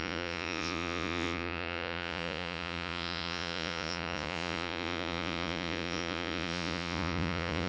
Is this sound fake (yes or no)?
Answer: yes